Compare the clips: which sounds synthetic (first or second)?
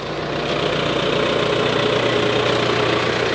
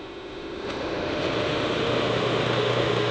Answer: second